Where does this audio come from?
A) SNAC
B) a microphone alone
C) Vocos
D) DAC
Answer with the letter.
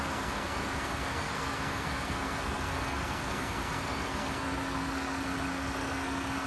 A